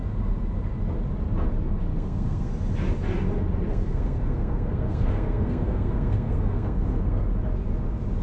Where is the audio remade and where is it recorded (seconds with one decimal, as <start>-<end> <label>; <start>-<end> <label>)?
0.0-1.9 recorded; 1.9-2.5 remade; 2.5-3.7 recorded; 3.7-7.3 remade; 7.3-8.2 recorded